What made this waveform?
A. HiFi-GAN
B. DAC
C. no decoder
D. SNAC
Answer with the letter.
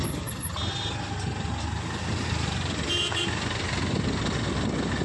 C